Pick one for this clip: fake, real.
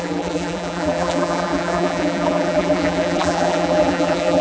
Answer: fake